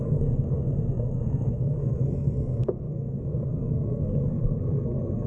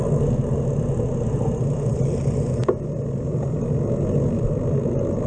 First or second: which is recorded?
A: second